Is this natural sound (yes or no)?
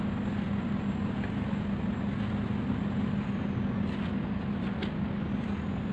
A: yes